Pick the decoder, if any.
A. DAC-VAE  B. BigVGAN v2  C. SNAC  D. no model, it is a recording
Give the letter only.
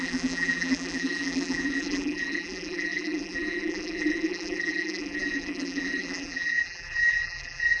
B